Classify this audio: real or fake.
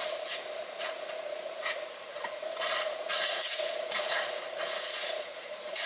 fake